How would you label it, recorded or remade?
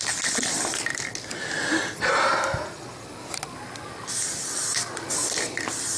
recorded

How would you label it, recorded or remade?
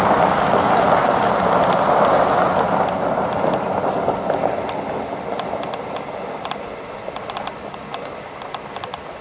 recorded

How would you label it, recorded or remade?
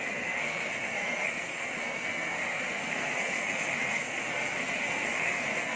remade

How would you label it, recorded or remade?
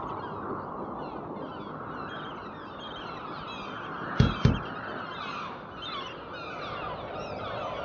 recorded